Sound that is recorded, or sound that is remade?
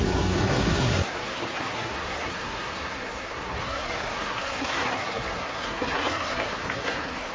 remade